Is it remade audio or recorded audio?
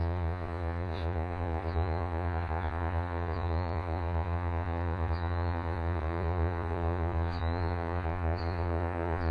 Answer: remade